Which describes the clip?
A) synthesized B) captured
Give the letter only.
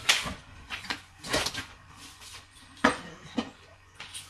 A